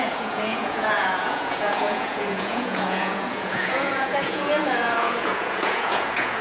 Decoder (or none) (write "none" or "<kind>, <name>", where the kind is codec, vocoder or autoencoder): vocoder, Vocos